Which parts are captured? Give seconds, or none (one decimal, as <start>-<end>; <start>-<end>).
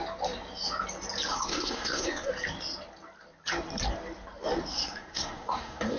0.0-1.3; 2.3-4.7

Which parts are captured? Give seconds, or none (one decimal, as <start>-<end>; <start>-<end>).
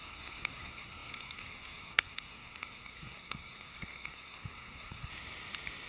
5.1-5.9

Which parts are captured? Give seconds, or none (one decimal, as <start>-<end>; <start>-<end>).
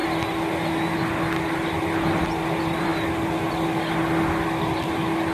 0.0-5.3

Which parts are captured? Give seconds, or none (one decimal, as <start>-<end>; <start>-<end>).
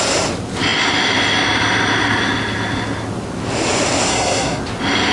0.0-4.1; 4.6-5.1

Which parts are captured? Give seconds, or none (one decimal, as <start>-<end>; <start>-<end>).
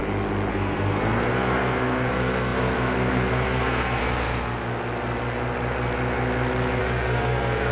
0.0-0.5; 4.0-6.8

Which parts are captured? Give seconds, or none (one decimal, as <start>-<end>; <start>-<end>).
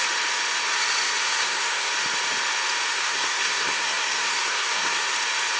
0.0-1.4; 1.9-2.9; 5.0-5.6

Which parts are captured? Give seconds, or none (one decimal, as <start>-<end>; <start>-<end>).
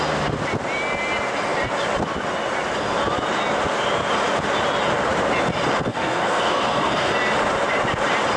0.0-5.9; 7.1-8.4